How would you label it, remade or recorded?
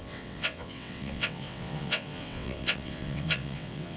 remade